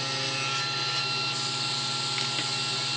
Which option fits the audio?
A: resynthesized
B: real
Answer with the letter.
B